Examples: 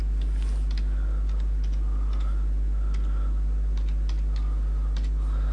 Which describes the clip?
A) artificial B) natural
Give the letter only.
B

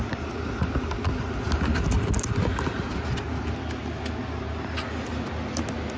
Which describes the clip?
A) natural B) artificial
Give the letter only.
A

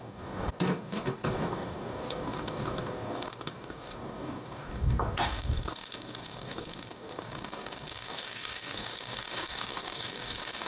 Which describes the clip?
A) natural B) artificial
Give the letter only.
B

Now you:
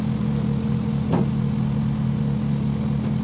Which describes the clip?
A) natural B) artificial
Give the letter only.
A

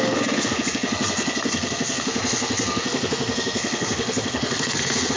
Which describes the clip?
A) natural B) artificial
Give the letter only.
B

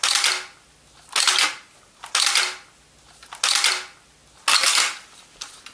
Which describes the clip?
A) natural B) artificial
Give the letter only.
A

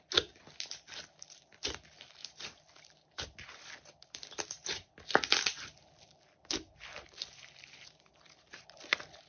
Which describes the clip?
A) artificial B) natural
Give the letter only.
B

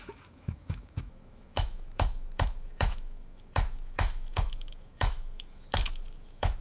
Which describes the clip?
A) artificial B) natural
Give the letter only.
A